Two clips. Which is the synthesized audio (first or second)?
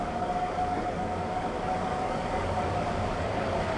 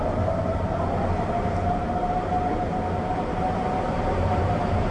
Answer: first